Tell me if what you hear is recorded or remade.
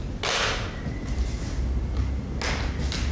recorded